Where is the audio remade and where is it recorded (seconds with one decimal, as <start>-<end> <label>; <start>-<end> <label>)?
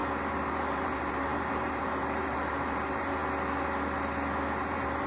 0.0-0.5 recorded; 0.5-3.2 remade; 3.2-4.6 recorded; 4.6-5.1 remade